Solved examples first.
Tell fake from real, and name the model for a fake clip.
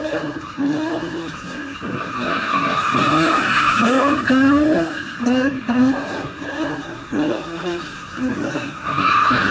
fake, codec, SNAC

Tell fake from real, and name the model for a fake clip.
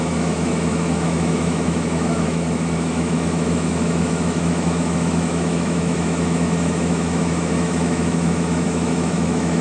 fake, autoencoder, DAC-VAE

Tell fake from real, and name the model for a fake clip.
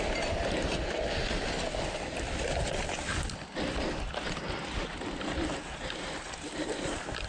real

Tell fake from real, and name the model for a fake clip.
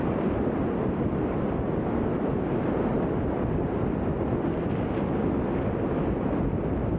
real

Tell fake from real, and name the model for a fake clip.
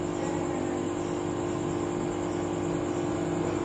real